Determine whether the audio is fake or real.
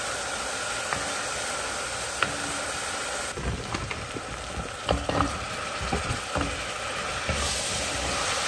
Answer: real